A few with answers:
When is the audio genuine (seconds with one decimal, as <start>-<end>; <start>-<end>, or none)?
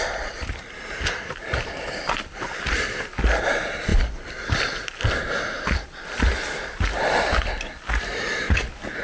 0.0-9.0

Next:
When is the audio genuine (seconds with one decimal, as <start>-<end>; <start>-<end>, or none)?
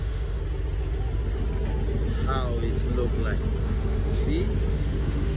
0.4-3.6; 4.2-4.7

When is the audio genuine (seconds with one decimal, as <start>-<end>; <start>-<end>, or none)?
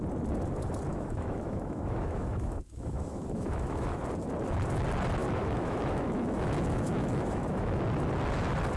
0.0-0.9; 4.0-5.2; 7.8-8.8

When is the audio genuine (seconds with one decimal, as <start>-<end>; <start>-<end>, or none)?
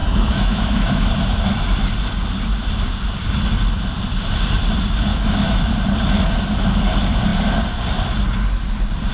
1.1-5.1; 5.7-9.1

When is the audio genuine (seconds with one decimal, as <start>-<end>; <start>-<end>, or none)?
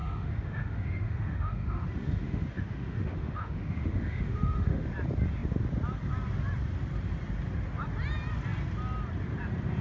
4.9-9.8